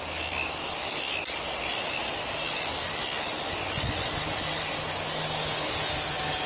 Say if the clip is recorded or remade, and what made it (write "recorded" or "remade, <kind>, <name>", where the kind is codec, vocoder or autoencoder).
recorded